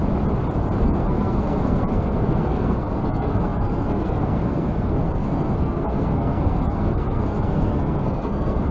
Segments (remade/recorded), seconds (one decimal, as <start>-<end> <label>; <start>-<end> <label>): 0.0-0.8 recorded; 0.8-8.7 remade